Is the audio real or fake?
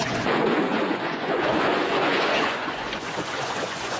fake